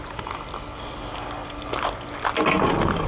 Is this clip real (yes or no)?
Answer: yes